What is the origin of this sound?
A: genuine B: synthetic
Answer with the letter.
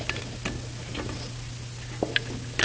A